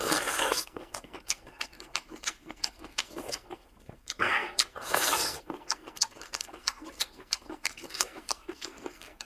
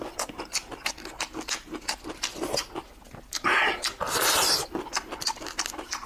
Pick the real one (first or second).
second